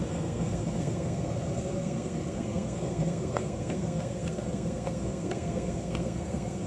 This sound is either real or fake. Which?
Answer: fake